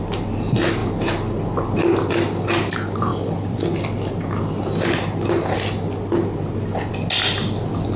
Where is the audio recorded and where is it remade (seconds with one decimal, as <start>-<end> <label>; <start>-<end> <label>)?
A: 0.0-8.0 recorded